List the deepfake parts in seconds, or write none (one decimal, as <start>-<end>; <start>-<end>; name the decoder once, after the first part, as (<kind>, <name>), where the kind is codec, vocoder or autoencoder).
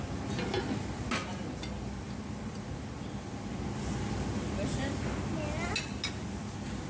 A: none